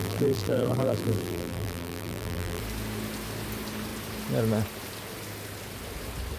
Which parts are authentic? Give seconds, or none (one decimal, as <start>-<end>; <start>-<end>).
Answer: 2.6-6.4